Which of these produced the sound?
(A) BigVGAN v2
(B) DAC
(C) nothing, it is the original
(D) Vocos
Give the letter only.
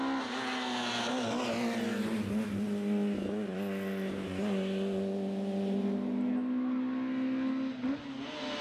C